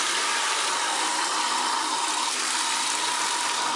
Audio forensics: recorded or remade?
recorded